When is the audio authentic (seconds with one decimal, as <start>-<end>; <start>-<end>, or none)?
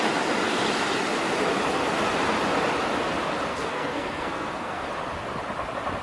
0.0-3.5; 4.9-6.0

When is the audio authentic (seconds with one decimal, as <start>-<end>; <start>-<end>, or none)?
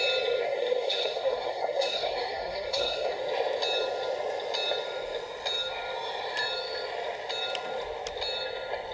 0.0-0.4; 3.2-8.9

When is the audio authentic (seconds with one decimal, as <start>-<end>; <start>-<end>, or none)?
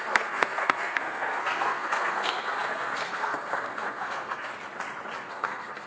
4.5-5.3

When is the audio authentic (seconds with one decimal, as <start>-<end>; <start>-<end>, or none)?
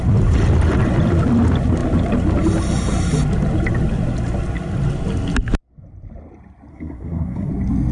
0.0-6.7; 7.5-7.9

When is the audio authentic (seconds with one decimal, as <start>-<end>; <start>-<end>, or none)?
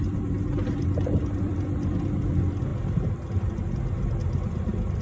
0.0-5.0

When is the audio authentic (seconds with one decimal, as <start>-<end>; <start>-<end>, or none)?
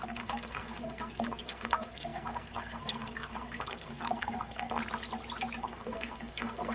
4.8-5.6